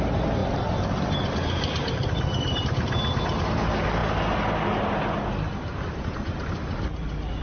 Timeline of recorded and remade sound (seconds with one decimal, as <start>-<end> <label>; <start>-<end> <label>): 0.0-7.4 recorded